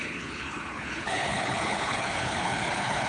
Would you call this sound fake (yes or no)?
yes